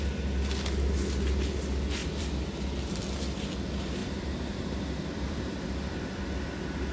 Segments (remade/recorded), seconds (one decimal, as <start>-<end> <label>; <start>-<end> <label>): 0.0-2.0 recorded; 2.0-2.6 remade; 2.6-4.0 recorded; 4.0-6.2 remade; 6.2-6.9 recorded